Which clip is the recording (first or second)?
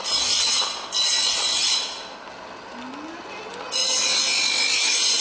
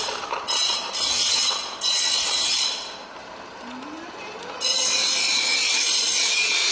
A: first